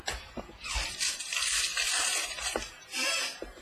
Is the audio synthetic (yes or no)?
yes